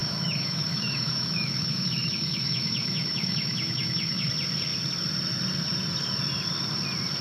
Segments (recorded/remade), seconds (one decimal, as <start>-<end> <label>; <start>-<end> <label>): 0.0-4.3 remade; 4.3-7.2 recorded